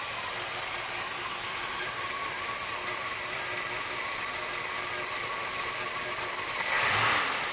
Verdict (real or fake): real